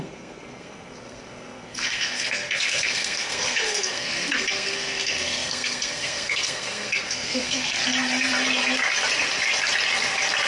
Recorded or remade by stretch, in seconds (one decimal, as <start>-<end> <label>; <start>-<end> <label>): 0.0-7.8 remade; 7.8-10.5 recorded